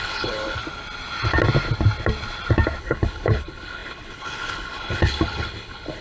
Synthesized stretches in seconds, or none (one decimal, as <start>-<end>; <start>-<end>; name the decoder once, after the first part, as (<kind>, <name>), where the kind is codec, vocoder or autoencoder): 0.0-0.6 (codec, HILCodec); 2.8-6.0